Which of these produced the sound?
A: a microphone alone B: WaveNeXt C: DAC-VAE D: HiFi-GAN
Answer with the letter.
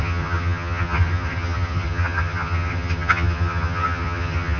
D